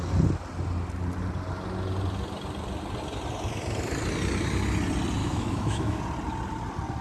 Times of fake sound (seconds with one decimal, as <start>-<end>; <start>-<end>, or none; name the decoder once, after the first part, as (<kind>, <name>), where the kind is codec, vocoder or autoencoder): 5.2-6.0 (autoencoder, DAC-VAE)